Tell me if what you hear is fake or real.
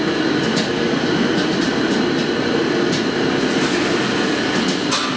real